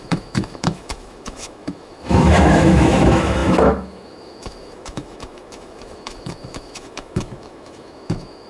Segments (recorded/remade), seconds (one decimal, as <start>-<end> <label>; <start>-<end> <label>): 0.0-8.5 remade